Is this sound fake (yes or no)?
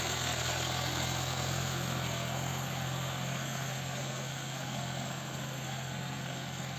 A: yes